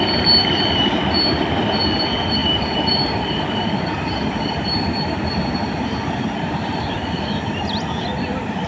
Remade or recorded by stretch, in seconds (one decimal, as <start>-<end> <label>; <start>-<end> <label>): 0.0-2.4 recorded; 2.4-7.6 remade; 7.6-8.7 recorded